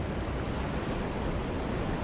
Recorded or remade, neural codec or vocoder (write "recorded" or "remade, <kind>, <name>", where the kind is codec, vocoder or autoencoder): recorded